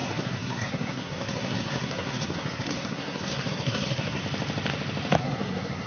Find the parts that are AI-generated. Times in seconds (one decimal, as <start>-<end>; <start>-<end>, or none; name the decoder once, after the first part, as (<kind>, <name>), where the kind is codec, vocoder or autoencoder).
0.0-4.2 (codec, SNAC); 5.2-5.9